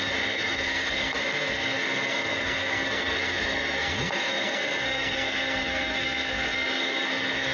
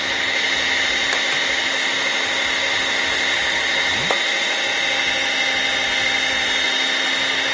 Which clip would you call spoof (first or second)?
first